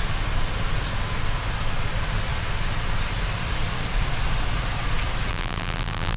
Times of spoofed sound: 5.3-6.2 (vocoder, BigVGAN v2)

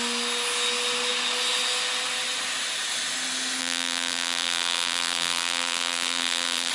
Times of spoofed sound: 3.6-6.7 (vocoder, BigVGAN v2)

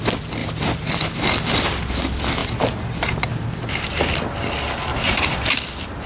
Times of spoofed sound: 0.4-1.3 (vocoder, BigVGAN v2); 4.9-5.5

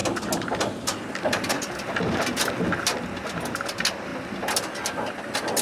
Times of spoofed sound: none